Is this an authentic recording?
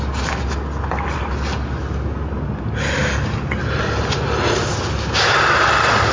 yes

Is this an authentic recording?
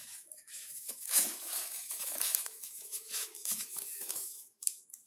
no